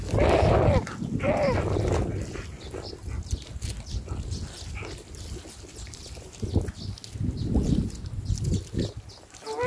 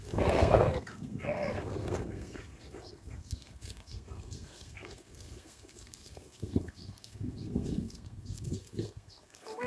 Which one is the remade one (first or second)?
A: second